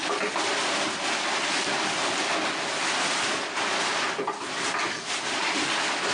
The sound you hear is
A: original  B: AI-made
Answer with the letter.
B